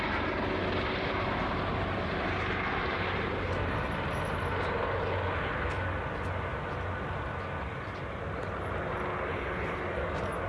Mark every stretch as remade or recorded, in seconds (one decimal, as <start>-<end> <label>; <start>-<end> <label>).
0.0-9.3 recorded; 9.3-9.8 remade; 9.8-10.5 recorded